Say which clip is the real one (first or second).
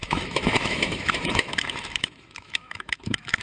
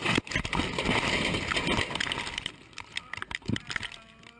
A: second